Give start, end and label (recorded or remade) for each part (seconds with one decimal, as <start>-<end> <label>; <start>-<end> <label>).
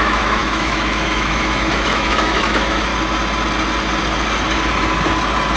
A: 0.0-2.9 remade; 2.9-5.6 recorded